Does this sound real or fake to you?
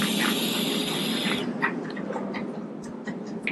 real